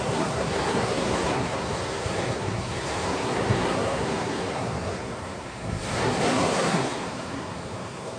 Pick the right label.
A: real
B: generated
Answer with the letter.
B